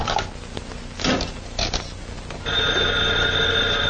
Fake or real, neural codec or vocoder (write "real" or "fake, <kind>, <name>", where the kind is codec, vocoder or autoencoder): real